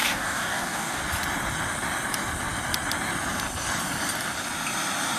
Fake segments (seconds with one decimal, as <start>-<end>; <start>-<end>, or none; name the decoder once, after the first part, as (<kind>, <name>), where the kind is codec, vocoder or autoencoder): 0.0-1.0 (codec, DAC)